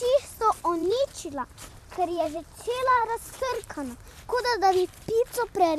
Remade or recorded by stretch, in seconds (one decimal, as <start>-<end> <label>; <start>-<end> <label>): 0.0-0.8 recorded; 0.8-4.3 remade; 4.3-5.8 recorded